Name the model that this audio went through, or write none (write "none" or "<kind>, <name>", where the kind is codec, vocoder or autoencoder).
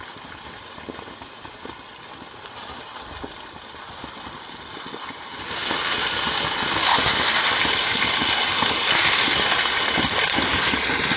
none